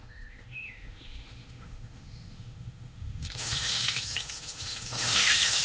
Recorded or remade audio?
remade